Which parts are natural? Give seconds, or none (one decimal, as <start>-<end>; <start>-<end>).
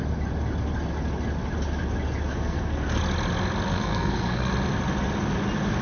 0.0-2.3; 3.0-3.7; 4.5-5.8